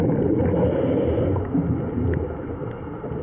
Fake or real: real